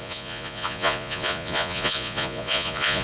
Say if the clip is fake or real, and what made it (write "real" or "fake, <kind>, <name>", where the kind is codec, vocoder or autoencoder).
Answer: fake, vocoder, Vocos